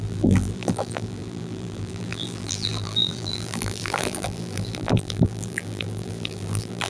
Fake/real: fake